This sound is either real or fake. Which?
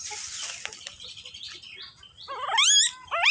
real